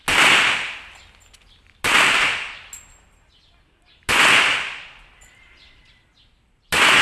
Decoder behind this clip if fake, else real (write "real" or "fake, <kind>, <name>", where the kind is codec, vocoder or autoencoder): real